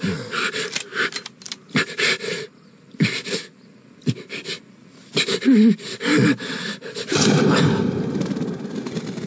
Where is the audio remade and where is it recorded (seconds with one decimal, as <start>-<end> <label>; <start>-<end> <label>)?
0.0-9.3 recorded